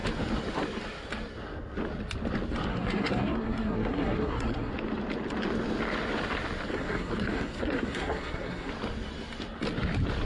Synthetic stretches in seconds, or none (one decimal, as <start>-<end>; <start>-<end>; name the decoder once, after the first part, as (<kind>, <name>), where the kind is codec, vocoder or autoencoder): 2.7-4.7 (codec, SNAC); 6.7-8.7